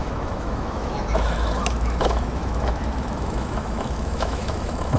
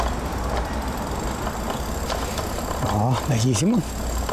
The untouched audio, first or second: second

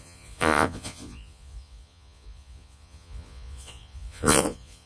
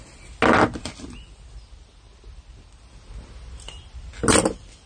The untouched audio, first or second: second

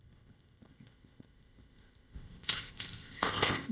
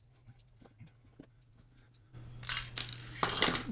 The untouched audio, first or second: second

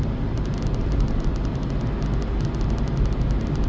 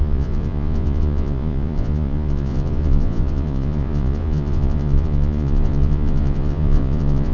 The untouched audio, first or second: first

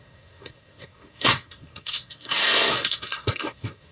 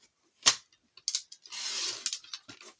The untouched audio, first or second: second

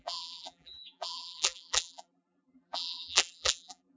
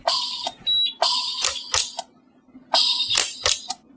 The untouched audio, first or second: second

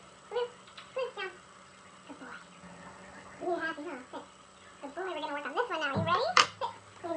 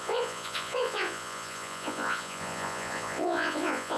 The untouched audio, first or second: first